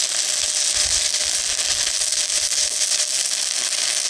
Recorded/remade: recorded